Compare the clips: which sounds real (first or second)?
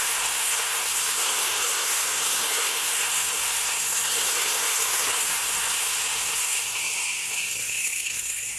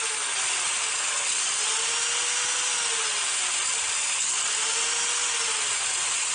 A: second